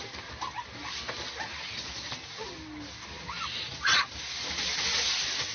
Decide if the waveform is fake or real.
real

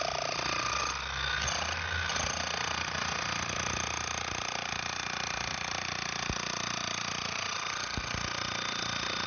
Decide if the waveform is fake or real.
real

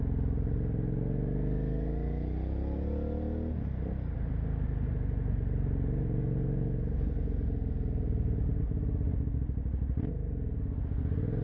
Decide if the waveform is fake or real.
real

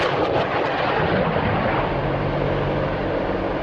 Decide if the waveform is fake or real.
real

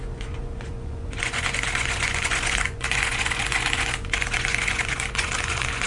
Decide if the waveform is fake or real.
fake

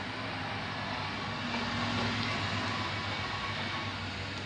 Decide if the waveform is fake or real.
real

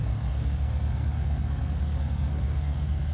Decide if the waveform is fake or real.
fake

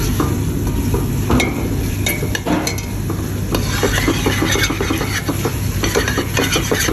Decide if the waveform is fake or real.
real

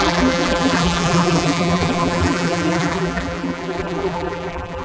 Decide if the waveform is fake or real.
fake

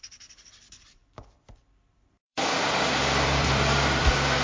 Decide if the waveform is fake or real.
fake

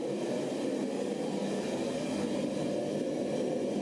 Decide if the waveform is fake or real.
real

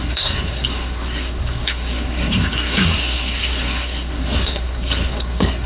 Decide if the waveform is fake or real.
fake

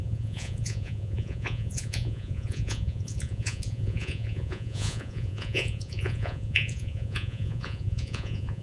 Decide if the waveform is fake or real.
fake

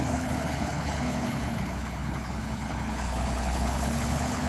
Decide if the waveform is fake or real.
fake